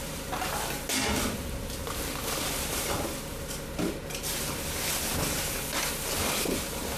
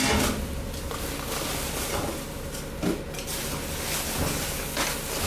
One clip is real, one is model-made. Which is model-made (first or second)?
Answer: first